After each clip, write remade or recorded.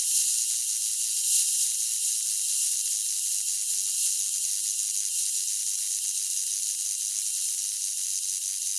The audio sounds recorded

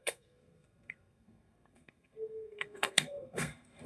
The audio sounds remade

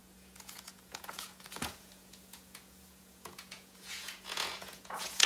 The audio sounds remade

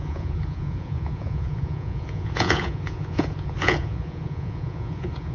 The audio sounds remade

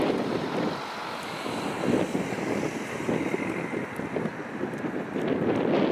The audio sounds recorded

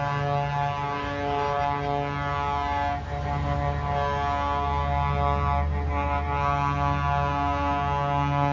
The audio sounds recorded